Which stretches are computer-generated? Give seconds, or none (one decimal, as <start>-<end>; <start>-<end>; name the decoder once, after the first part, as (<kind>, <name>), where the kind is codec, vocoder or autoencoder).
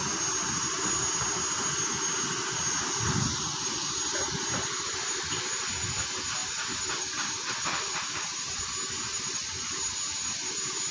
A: none